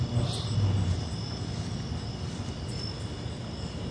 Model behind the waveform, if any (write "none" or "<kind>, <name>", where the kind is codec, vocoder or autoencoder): none